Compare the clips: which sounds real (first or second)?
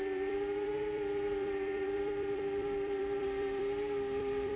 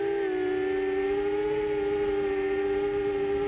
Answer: second